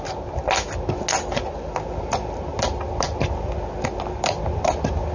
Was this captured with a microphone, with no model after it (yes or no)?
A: yes